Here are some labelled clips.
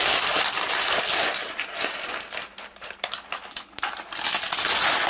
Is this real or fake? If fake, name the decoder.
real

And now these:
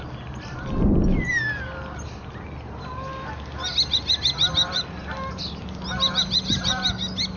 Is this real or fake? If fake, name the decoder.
real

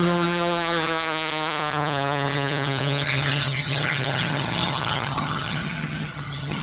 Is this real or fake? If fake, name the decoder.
fake, vocoder, HiFi-GAN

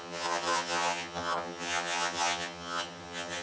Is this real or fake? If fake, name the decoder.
fake, vocoder, HiFi-GAN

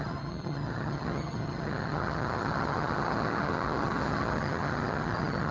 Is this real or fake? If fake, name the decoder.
fake, vocoder, HiFi-GAN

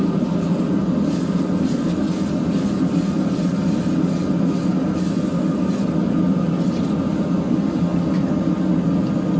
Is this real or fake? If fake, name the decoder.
real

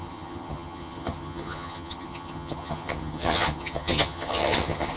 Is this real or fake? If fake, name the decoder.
fake, vocoder, HiFi-GAN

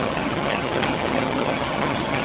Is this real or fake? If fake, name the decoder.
fake, vocoder, HiFi-GAN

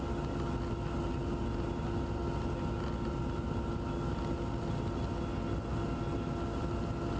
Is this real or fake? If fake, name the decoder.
real